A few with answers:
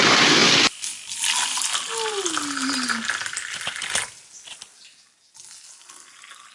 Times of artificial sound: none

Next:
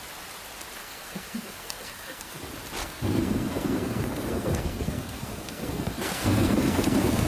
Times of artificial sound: 0.8-2.4 (codec, SNAC); 2.8-7.3

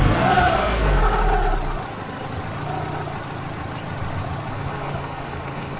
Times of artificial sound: 0.0-1.0 (codec, SNAC); 4.5-5.8

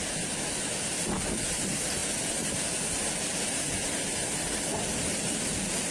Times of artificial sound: none

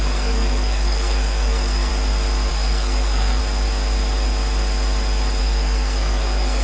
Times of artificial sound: 0.0-1.9 (codec, SNAC); 2.5-3.4; 5.4-6.6

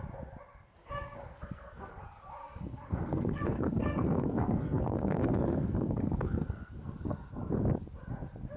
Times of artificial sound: 0.8-1.9 (codec, SNAC); 2.4-7.3

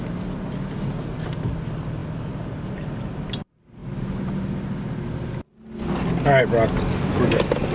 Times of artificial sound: none